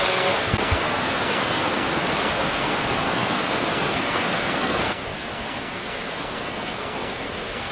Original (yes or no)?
no